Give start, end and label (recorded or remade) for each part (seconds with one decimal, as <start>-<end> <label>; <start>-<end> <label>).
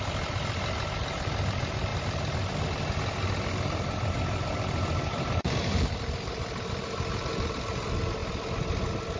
0.0-9.2 recorded